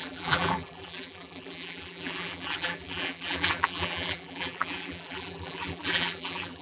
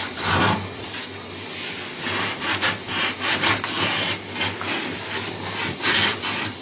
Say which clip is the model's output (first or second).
first